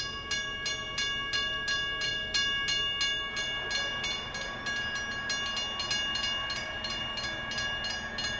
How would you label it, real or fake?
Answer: real